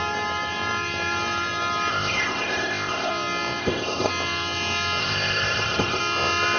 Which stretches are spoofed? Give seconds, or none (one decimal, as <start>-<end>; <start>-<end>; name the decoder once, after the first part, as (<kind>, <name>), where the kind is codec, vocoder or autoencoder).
1.9-3.1 (codec, ZipCodec); 3.6-4.1; 5.0-6.0